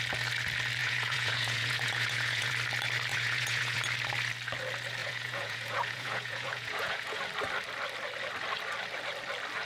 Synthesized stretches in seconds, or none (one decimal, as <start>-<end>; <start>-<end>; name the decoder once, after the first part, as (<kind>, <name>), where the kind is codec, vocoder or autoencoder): 0.8-2.5 (vocoder, Vocos); 3.1-3.8; 5.0-7.2